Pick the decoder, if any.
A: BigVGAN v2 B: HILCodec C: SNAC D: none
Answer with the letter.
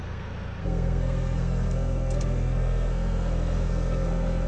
C